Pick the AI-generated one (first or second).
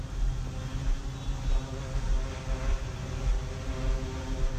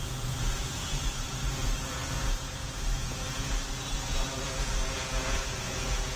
second